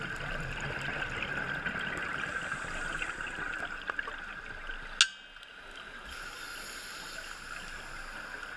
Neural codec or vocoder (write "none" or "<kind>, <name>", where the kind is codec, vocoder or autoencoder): none